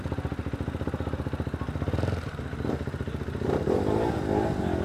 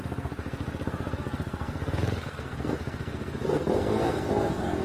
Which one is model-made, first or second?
second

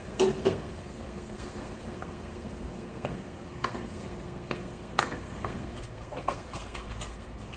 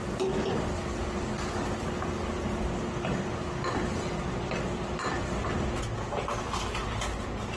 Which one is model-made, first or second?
first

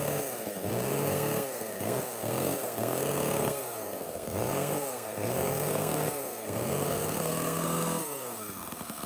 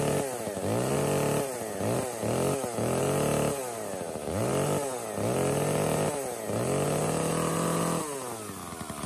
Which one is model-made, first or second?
first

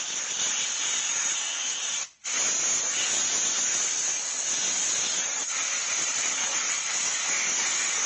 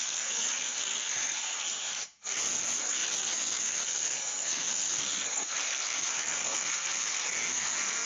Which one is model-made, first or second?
second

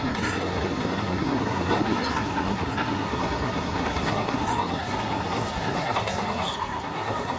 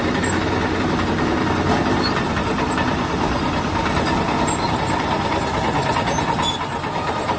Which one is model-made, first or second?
first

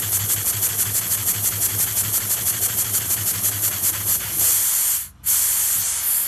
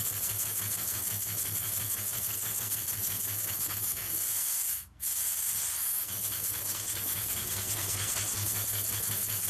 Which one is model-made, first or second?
second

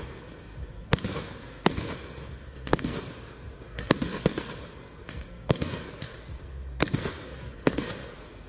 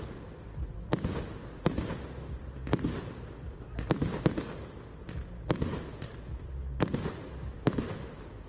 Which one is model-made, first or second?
first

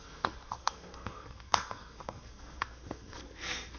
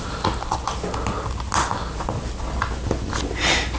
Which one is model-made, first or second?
first